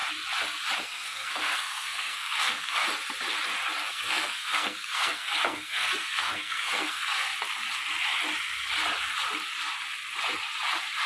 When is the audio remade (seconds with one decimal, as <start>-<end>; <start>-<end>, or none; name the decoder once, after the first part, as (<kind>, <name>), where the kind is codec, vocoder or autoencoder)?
0.8-2.8 (codec, SNAC); 3.9-7.3